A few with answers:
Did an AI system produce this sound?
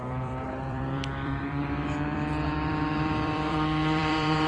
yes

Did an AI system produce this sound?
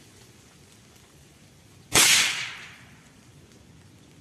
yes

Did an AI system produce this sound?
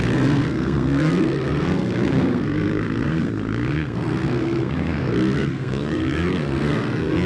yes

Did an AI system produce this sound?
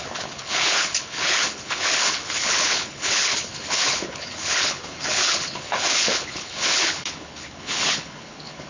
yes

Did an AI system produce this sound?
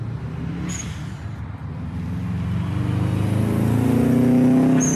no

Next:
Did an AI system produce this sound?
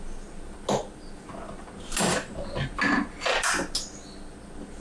no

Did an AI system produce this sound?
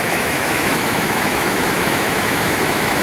yes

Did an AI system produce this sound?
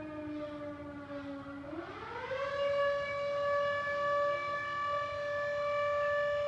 no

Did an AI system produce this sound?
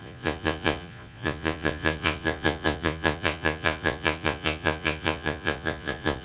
yes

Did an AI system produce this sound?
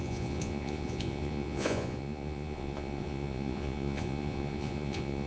yes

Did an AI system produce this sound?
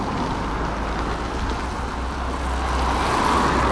no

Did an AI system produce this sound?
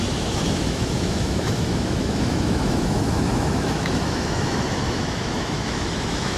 yes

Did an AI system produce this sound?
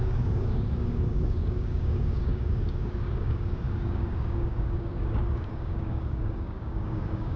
yes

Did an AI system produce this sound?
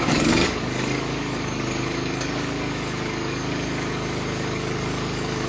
yes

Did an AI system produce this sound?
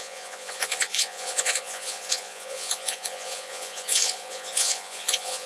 yes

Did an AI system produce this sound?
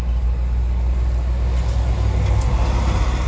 no